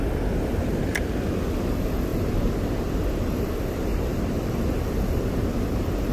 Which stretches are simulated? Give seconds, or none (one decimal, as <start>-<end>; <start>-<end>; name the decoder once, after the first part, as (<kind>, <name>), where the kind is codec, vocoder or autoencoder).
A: 3.9-4.9 (vocoder, BigVGAN v2)